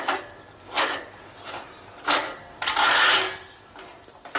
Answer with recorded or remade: recorded